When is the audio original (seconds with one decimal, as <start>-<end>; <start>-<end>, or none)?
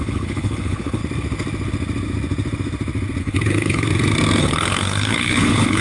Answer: 1.0-3.2; 3.9-4.4